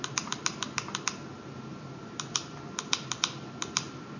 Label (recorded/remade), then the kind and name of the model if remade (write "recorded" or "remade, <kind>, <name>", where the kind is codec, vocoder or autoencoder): recorded